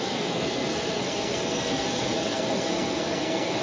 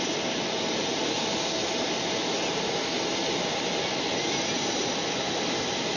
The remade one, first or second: first